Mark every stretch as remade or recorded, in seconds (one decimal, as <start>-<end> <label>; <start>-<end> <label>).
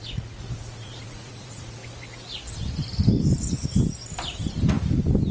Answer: 0.0-1.8 remade; 1.8-5.3 recorded